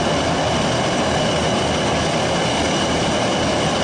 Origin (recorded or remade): recorded